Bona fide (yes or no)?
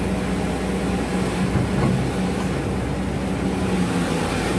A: yes